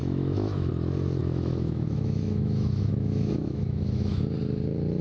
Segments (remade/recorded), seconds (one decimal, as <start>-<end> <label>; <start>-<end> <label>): 0.0-0.7 remade; 0.7-1.2 recorded; 1.2-4.2 remade; 4.2-5.0 recorded